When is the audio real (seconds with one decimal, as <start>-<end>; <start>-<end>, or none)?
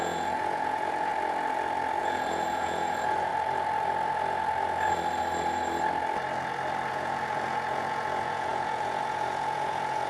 1.1-2.0; 3.3-6.9